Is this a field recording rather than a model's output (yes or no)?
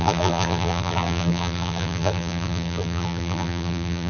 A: no